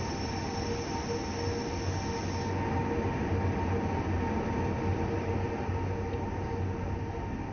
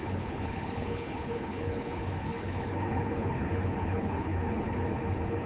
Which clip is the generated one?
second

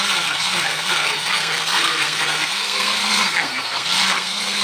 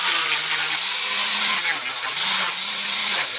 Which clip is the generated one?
first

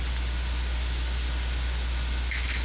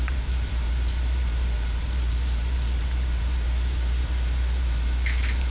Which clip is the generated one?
second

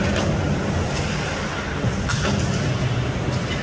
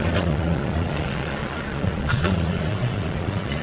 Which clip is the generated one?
second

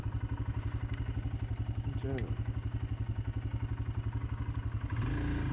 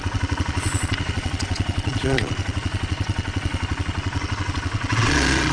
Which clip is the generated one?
second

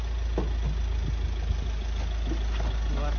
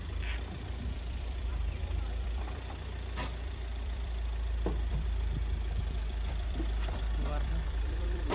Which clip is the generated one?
second